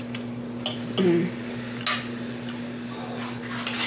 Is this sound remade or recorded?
recorded